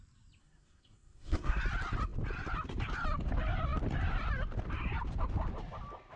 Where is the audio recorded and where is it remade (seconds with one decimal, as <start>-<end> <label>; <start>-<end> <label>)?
0.0-0.4 recorded; 0.4-1.6 remade; 1.6-6.2 recorded